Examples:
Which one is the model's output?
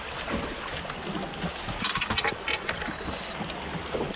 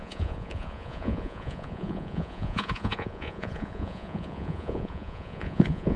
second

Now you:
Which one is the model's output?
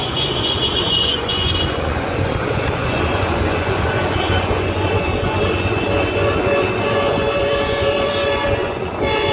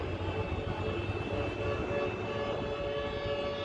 first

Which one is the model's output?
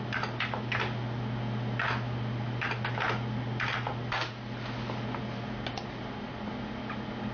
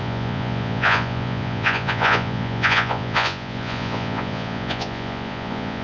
second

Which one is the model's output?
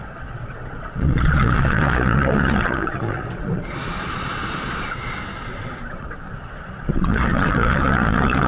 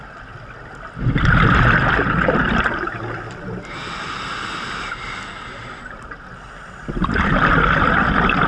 first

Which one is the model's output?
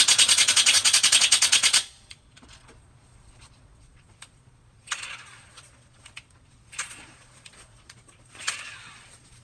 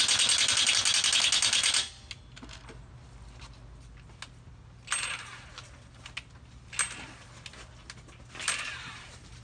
first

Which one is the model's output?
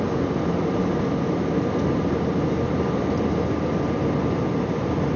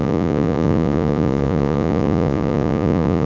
second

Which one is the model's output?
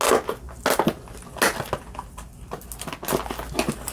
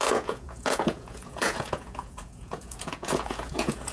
second